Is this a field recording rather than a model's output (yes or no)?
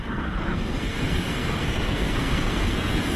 no